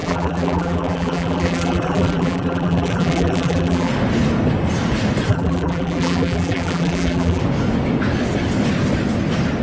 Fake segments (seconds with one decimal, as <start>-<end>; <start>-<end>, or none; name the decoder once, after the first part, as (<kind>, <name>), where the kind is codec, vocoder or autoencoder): 0.0-3.9 (vocoder, BigVGAN v2); 5.3-7.4

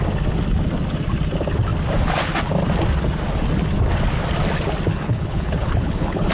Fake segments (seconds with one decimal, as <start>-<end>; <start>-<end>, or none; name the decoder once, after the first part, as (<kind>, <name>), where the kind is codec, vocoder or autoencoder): 4.9-6.3 (codec, HILCodec)

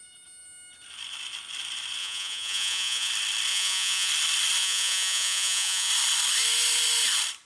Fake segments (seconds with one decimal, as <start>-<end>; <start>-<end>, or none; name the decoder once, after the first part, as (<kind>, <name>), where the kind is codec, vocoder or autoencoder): 2.0-3.1 (vocoder, Vocos); 3.5-4.1; 4.6-5.9

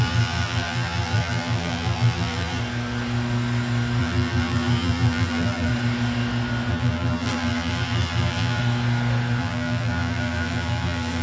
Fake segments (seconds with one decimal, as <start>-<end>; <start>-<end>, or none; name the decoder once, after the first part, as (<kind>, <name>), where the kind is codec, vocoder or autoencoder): 0.0-2.6 (vocoder, BigVGAN v2); 4.0-5.7; 6.7-8.6; 9.4-11.2

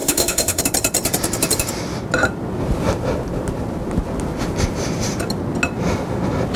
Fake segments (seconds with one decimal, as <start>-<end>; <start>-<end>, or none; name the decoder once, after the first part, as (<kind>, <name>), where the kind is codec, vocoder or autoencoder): 0.0-0.6 (autoencoder, DAC-VAE)